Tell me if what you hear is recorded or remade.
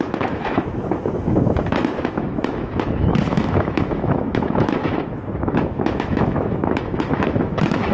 remade